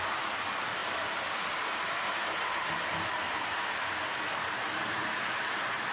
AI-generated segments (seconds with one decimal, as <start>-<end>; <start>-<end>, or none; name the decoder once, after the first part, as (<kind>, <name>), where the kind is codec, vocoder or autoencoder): none